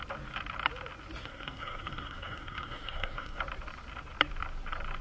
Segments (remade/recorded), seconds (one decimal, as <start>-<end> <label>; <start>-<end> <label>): 0.0-1.2 recorded; 1.2-3.4 remade; 3.4-5.0 recorded